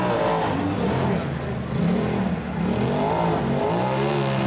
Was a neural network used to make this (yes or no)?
no